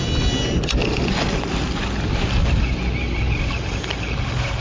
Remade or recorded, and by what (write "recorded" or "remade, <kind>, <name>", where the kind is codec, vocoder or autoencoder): recorded